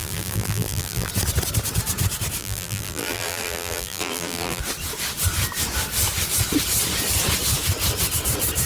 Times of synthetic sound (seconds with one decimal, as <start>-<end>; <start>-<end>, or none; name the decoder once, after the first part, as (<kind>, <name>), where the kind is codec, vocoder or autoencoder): 0.0-1.1 (vocoder, BigVGAN v2); 2.4-4.6